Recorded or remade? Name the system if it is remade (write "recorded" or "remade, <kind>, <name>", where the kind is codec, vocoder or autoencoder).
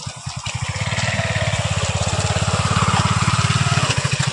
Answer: recorded